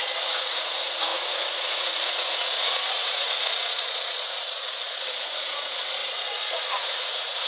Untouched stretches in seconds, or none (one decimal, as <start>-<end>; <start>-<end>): none